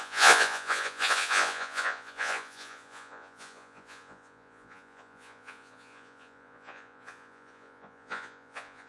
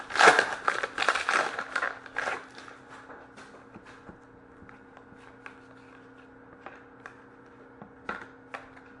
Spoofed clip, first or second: first